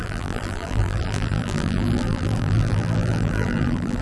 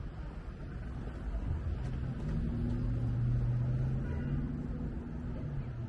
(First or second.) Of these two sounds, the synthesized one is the first